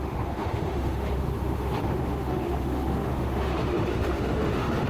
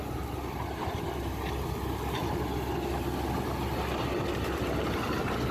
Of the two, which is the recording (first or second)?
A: second